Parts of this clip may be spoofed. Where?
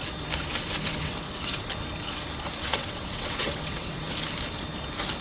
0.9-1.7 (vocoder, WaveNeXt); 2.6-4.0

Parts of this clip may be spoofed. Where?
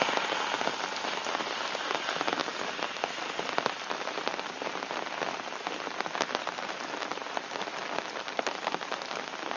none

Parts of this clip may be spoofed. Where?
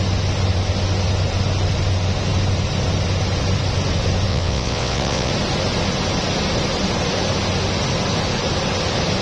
4.3-5.3 (vocoder, WaveNeXt)